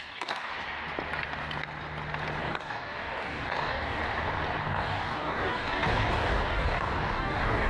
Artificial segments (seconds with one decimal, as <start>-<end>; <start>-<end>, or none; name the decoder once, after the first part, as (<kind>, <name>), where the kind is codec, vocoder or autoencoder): 0.0-0.5 (codec, DAC); 2.4-4.0; 4.6-7.7